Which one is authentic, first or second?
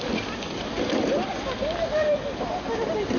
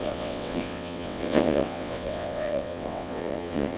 first